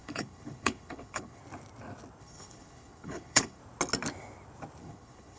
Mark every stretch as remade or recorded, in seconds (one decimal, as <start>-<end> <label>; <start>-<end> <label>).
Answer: 0.0-1.4 remade; 1.4-2.2 recorded; 2.2-3.6 remade; 3.6-4.8 recorded; 4.8-5.4 remade